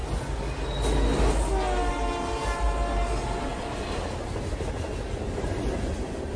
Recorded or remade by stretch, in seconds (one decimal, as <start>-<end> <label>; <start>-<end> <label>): 0.0-6.4 recorded